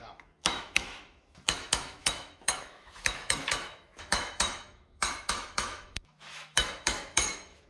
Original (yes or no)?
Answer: no